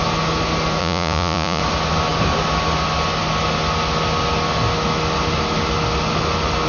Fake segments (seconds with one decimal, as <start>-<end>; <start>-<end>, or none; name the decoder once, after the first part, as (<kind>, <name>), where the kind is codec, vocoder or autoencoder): 0.8-1.6 (vocoder, Vocos)